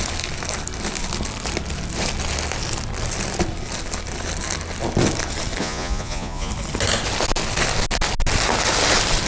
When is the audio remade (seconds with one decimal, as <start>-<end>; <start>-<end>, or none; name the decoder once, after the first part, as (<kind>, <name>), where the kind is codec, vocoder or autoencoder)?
5.6-6.5 (vocoder, Vocos)